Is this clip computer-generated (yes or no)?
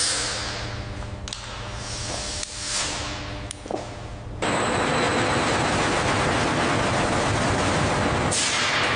no